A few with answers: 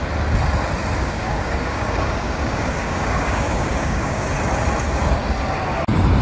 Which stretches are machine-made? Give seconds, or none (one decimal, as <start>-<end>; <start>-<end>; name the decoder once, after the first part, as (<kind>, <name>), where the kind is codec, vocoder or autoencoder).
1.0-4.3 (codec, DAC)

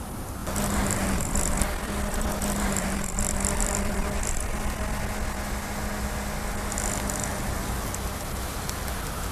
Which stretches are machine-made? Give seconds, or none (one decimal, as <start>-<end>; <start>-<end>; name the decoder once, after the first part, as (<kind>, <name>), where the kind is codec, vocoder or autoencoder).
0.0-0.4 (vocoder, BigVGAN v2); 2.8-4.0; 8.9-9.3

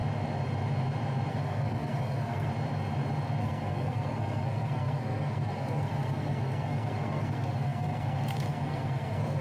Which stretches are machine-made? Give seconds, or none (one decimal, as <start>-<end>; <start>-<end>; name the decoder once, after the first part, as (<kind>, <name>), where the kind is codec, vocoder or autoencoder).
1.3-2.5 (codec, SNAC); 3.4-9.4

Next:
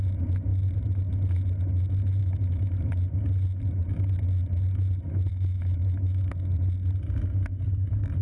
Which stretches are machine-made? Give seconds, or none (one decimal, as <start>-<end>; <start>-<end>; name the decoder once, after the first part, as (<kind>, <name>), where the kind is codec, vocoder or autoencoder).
2.2-2.9 (autoencoder, DAC-VAE); 5.3-6.3

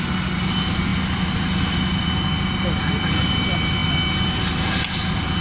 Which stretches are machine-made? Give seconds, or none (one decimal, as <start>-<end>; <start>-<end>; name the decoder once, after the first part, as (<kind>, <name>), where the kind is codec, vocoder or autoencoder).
none